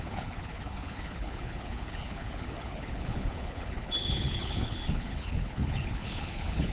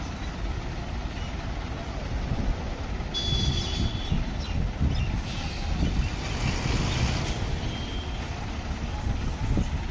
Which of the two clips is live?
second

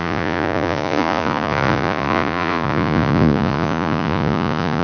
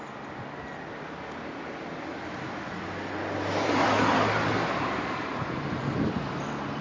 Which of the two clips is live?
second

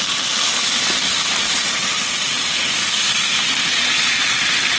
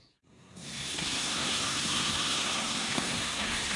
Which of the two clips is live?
first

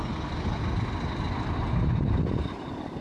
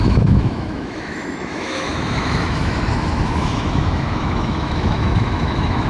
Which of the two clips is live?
first